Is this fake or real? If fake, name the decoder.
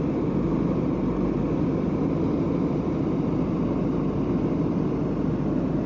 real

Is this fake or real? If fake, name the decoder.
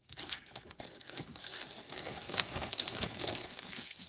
fake, codec, SNAC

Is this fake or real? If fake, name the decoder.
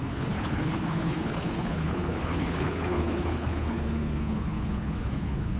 fake, codec, HILCodec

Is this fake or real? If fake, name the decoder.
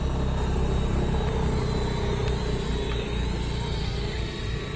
real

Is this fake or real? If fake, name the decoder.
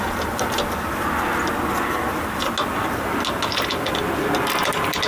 real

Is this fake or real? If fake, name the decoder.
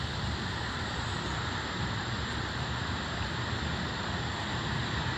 fake, vocoder, BigVGAN v2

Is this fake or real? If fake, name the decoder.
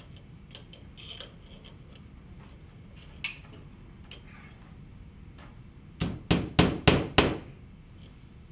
real